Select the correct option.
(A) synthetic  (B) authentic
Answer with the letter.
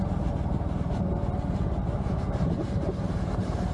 A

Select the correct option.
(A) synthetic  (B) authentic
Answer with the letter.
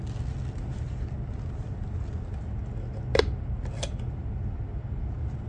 B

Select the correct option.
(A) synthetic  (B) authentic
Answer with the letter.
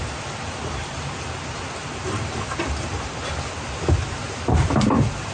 B